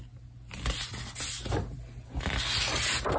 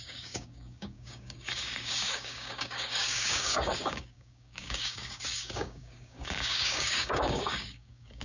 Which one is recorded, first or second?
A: first